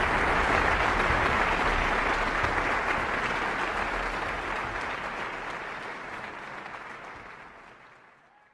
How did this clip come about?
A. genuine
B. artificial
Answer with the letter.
A